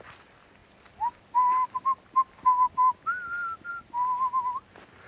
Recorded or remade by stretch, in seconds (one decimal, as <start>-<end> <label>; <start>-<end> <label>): 0.0-5.1 recorded

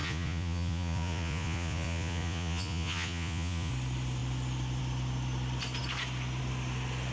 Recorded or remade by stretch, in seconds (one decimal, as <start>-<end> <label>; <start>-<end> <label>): 0.0-3.7 remade; 3.7-7.1 recorded

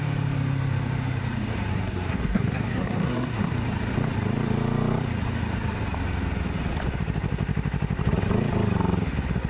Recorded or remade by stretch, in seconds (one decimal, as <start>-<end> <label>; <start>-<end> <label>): 0.0-1.7 recorded; 1.7-3.5 remade; 3.5-9.5 recorded

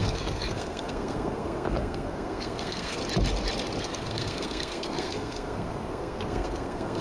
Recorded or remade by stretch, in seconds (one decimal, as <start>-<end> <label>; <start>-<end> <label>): 0.0-3.0 remade; 3.0-3.8 recorded; 3.8-7.0 remade

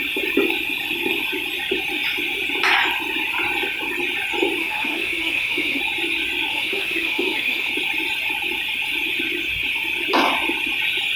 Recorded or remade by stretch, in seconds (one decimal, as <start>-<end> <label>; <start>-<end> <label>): 0.0-4.6 recorded; 4.6-5.8 remade; 5.8-6.5 recorded; 6.5-7.7 remade; 7.7-11.2 recorded